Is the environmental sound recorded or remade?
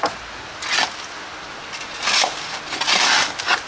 recorded